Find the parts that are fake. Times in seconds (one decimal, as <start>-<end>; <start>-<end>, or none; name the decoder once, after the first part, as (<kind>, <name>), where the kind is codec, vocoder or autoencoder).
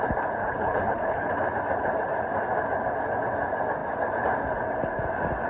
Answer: 0.4-1.3 (codec, HILCodec)